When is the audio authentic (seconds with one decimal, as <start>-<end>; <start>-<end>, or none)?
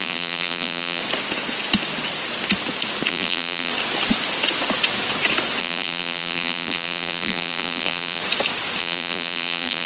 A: 1.0-3.1; 3.7-5.6; 8.2-8.8